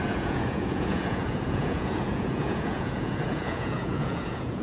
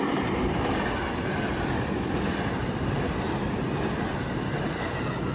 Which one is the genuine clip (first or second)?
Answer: second